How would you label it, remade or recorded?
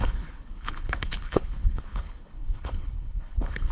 remade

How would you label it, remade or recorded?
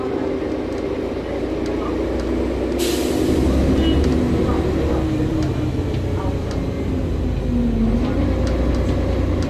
recorded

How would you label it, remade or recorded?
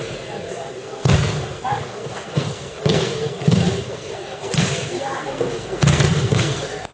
remade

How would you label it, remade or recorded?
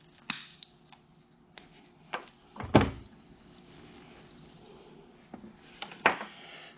recorded